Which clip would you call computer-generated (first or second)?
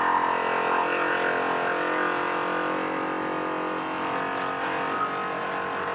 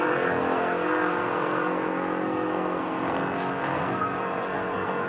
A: second